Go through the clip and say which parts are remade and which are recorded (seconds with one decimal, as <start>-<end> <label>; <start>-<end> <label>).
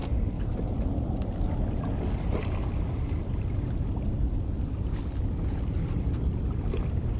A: 0.0-7.2 recorded